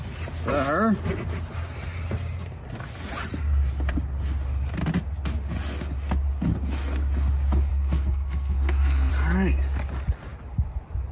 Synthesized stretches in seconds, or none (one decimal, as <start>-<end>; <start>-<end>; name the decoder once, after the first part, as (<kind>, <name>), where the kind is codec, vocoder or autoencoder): 7.7-9.1 (codec, SNAC)